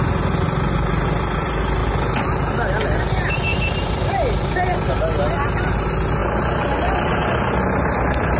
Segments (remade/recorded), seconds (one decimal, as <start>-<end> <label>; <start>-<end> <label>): 0.0-3.5 recorded; 3.5-4.1 remade; 4.1-8.4 recorded